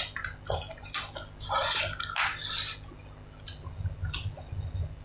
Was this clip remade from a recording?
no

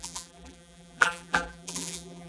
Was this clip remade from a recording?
yes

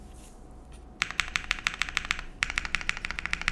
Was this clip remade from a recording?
no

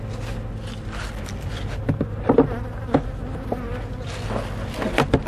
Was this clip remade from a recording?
no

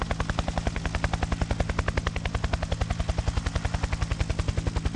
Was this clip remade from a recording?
no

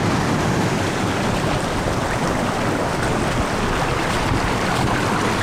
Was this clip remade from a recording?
yes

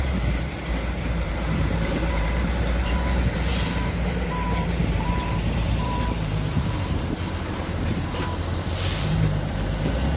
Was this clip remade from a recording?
yes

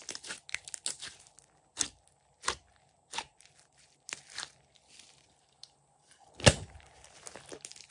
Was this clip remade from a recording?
no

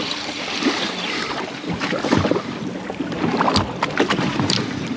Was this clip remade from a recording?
no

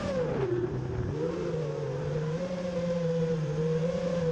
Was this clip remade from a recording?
yes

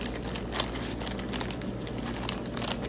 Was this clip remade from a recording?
no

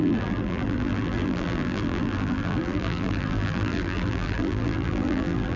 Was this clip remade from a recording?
yes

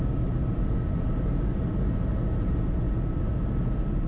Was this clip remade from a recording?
no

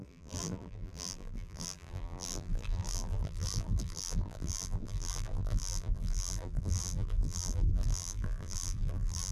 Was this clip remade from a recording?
yes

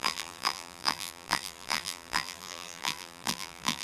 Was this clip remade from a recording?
yes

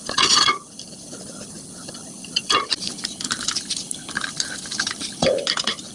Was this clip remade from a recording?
yes